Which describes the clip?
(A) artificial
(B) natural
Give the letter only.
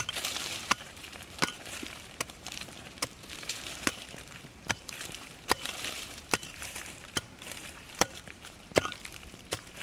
A